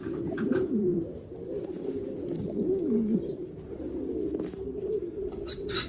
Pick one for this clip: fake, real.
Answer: real